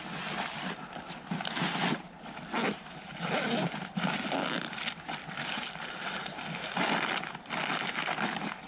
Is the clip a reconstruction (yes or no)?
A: no